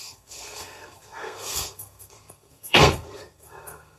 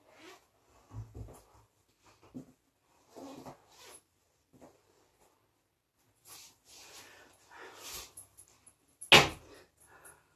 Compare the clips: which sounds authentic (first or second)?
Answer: second